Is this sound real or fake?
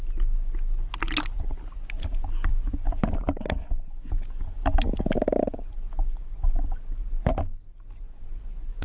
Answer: real